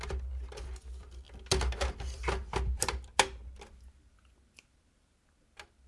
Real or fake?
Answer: real